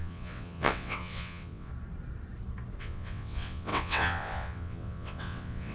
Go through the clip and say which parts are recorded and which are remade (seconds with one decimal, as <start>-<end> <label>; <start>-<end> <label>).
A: 0.0-1.7 remade; 1.7-2.8 recorded; 2.8-5.7 remade